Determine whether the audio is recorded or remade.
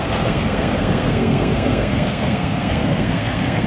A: remade